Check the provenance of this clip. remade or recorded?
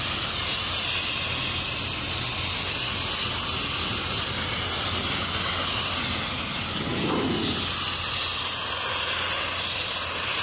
recorded